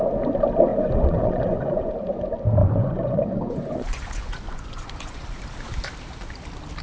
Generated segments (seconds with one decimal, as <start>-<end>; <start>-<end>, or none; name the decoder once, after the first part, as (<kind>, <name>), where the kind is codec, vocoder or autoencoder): 0.7-1.9 (vocoder, Vocos); 2.6-5.4